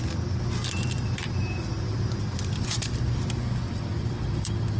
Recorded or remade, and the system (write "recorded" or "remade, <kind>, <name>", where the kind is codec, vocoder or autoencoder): recorded